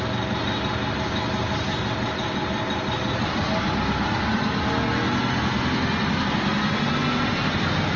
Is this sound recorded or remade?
recorded